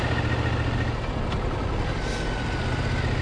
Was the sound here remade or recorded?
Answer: recorded